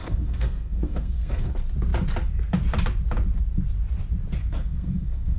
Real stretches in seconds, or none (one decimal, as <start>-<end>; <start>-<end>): 1.5-4.4